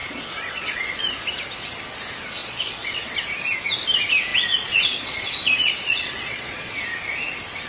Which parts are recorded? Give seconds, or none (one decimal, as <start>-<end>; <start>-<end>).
1.0-2.4; 3.1-4.3; 6.7-7.7